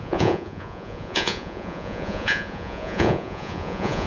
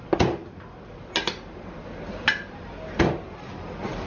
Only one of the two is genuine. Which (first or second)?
second